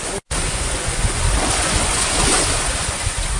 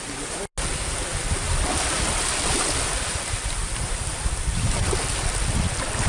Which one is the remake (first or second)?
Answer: first